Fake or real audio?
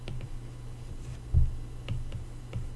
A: real